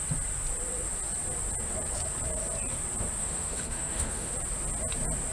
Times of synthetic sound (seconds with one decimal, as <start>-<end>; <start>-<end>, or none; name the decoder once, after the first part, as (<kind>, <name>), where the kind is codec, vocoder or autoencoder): 3.2-4.3 (autoencoder, DAC-VAE)